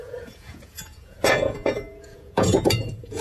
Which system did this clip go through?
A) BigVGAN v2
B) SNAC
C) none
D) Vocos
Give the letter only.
D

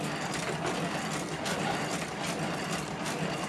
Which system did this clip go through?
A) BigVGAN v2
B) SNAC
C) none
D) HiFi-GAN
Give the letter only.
C